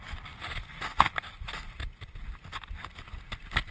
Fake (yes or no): no